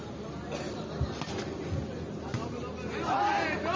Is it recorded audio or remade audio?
recorded